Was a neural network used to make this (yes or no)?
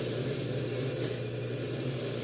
no